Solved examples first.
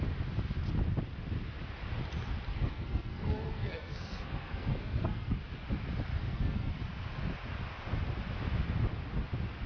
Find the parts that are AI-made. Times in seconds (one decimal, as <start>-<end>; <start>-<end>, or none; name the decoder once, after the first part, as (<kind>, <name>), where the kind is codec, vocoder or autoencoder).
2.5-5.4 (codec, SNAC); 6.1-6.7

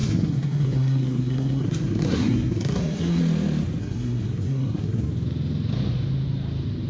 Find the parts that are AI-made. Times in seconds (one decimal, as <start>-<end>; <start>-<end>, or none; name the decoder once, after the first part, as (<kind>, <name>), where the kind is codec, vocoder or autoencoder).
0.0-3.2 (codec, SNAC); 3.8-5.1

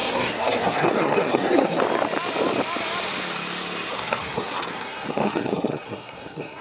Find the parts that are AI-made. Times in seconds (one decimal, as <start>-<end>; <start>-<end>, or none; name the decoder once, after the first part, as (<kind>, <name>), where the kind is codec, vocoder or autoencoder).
0.0-1.8 (codec, SNAC); 3.9-6.6